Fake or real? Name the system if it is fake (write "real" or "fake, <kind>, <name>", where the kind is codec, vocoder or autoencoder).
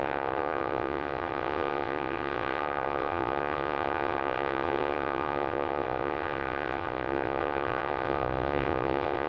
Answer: fake, vocoder, WaveNeXt